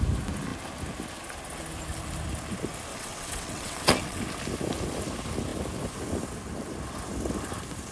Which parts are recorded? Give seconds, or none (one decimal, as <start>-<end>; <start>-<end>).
0.0-2.9; 4.2-7.9